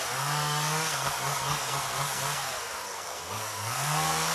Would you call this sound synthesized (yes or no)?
yes